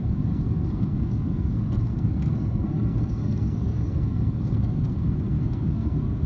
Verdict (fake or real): fake